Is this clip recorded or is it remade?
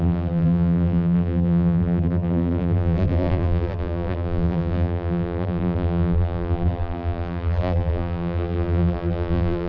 remade